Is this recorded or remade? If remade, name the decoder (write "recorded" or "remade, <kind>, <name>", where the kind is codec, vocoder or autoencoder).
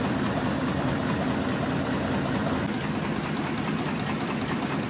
remade, vocoder, BigVGAN v2